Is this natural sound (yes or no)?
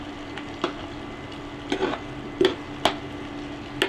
yes